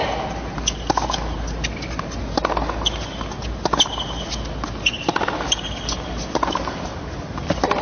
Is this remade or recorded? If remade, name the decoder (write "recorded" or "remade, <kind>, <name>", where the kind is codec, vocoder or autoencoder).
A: recorded